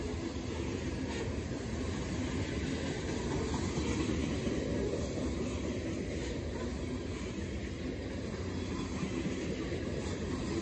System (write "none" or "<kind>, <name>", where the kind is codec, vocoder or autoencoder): none